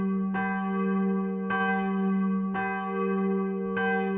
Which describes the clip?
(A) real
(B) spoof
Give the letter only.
A